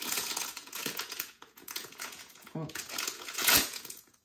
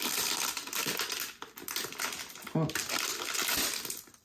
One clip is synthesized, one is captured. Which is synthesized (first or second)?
first